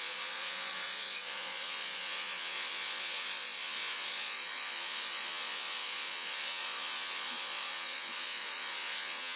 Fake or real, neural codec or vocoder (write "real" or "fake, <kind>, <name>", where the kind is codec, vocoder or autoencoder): fake, vocoder, Vocos